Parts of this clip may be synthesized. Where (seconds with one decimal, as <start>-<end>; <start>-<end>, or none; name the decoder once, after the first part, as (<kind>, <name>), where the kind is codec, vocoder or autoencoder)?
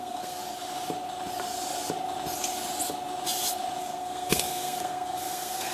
0.0-0.4 (codec, SNAC); 3.8-5.7